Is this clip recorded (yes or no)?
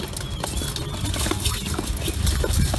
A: yes